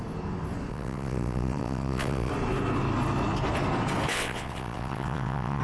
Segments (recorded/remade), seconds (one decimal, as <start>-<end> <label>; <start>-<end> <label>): 0.0-0.7 recorded; 0.7-2.3 remade; 2.3-4.1 recorded; 4.1-5.6 remade